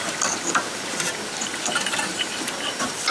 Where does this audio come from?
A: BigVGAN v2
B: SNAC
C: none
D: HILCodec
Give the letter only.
C